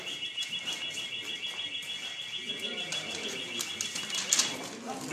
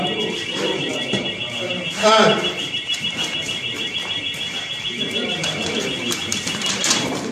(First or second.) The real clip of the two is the first